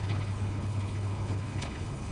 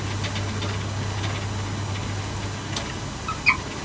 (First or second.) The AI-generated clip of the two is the first